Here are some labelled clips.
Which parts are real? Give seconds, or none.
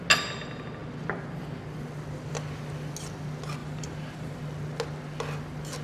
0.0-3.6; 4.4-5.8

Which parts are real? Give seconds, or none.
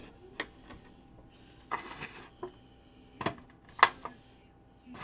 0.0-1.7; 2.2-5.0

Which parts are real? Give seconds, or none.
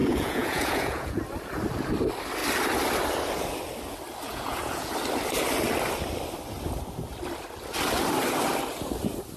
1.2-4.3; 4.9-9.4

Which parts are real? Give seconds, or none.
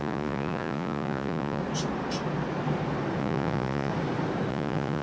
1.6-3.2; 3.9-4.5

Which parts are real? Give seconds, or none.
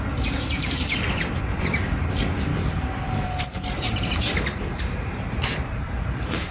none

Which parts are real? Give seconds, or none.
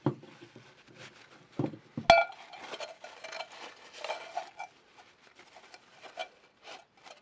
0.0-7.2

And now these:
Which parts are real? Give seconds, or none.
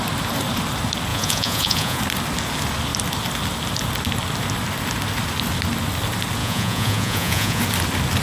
0.0-1.1; 2.0-6.4; 7.6-8.2